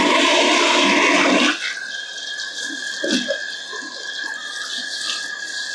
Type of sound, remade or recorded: recorded